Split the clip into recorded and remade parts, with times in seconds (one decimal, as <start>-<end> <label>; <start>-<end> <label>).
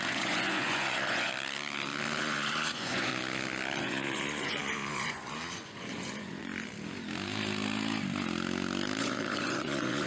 0.0-1.3 remade; 1.3-2.2 recorded; 2.2-3.1 remade; 3.1-3.8 recorded; 3.8-6.5 remade; 6.5-9.0 recorded; 9.0-10.1 remade